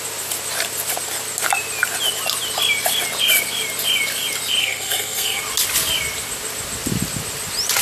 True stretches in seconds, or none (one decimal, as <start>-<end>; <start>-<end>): 0.0-4.6; 5.4-7.8